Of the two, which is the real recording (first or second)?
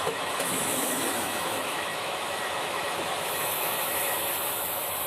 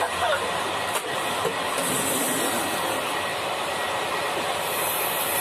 second